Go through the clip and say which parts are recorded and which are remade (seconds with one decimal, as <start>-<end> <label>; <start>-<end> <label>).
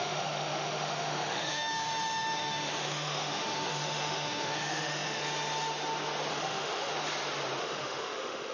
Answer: 0.0-5.2 remade; 5.2-6.3 recorded; 6.3-6.9 remade; 6.9-7.6 recorded; 7.6-8.5 remade